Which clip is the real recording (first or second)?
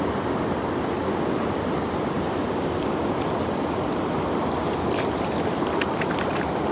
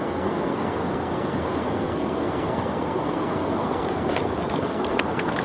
first